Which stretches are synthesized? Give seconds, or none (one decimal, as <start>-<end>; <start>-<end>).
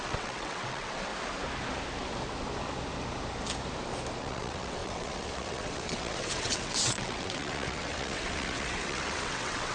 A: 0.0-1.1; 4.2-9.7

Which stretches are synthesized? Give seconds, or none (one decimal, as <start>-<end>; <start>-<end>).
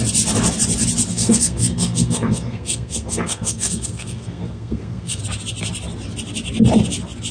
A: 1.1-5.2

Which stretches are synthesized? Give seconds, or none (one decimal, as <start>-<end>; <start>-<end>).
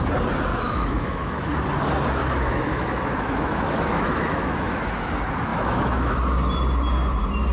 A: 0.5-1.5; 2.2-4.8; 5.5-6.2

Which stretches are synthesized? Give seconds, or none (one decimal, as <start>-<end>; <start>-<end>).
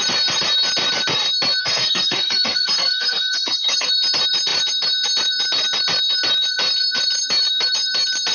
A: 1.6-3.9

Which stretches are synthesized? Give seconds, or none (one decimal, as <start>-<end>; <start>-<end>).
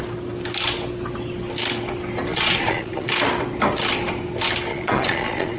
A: 2.3-3.1; 4.7-5.6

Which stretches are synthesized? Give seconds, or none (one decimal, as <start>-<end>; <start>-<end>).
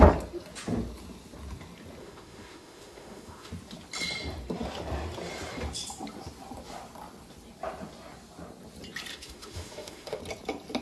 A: 2.0-3.5; 9.1-10.2